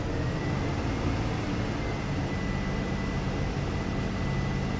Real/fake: real